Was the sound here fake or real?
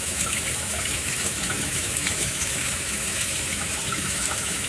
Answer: fake